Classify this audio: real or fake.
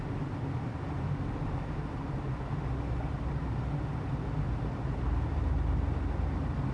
real